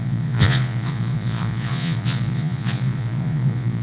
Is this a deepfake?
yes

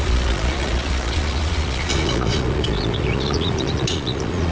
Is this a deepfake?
yes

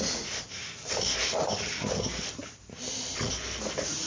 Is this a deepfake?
no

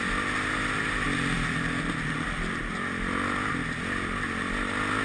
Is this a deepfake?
no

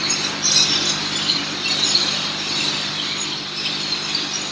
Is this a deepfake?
no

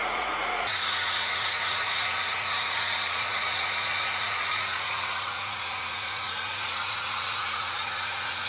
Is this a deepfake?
yes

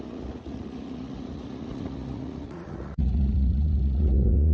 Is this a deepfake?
yes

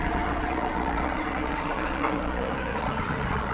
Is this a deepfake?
yes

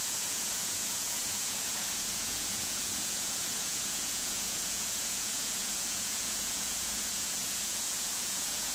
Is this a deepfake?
yes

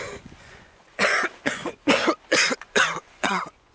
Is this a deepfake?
yes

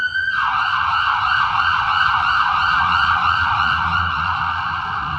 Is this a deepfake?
yes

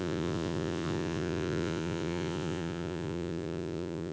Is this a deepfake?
yes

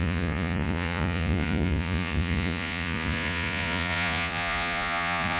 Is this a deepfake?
yes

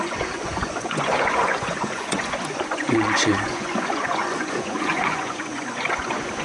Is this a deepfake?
yes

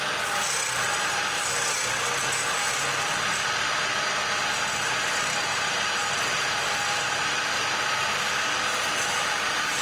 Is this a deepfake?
no